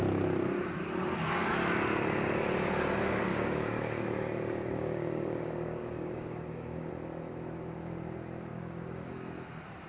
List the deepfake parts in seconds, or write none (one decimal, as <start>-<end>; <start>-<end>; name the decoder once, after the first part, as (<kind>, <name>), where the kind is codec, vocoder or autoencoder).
3.3-6.9 (codec, DAC); 8.5-9.1